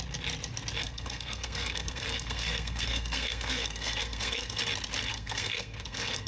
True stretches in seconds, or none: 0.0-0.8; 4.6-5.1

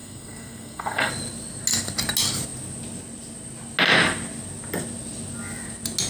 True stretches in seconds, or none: 1.1-6.1

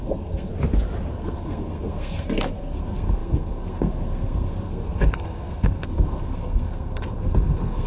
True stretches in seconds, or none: 0.5-1.1